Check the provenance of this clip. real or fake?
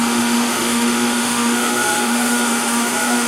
fake